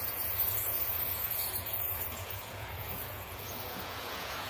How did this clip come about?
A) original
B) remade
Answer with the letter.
B